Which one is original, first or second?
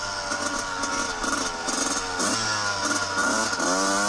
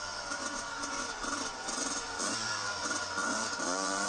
first